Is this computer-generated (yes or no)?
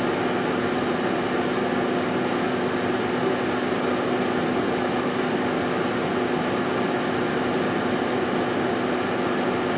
no